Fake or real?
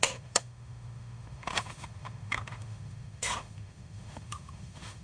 fake